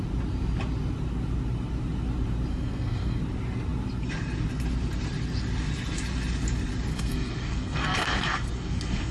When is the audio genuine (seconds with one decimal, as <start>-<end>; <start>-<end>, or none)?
0.0-2.5; 3.2-6.9